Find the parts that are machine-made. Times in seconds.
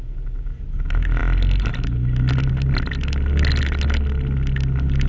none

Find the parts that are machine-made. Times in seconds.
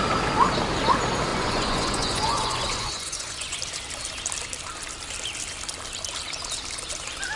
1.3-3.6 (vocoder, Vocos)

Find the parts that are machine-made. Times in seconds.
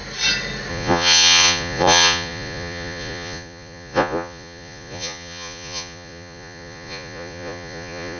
0.7-8.2 (vocoder, Vocos)